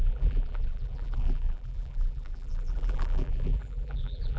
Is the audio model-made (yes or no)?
yes